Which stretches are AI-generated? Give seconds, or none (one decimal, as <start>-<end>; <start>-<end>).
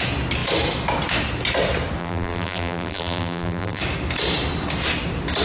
2.0-3.8